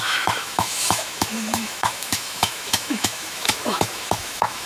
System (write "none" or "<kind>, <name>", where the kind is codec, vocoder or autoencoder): autoencoder, DAC-VAE